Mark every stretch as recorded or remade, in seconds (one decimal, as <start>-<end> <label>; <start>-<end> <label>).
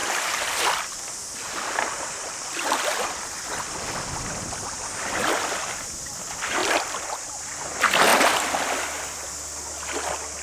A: 0.0-5.3 remade; 5.3-8.1 recorded; 8.1-9.3 remade; 9.3-10.4 recorded